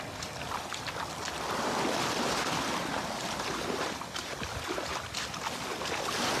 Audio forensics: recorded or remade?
recorded